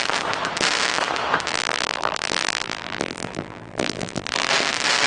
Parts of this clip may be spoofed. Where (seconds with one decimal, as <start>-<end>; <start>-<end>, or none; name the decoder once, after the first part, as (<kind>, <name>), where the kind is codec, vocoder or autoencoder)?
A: 1.5-4.5 (vocoder, BigVGAN v2)